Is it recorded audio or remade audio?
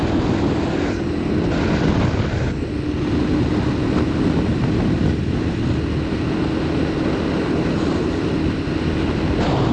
recorded